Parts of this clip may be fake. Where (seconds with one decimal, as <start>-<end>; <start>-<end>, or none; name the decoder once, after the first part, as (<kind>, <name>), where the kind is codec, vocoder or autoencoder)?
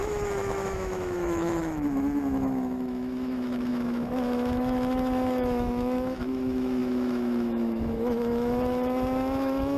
0.0-9.8 (autoencoder, DAC-VAE)